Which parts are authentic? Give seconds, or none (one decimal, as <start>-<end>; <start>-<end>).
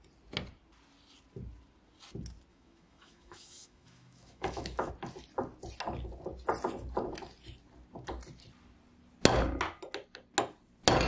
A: 0.0-2.5; 4.9-11.1